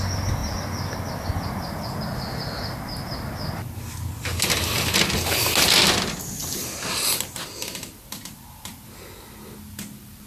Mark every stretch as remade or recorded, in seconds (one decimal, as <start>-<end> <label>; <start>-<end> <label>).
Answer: 0.0-10.3 recorded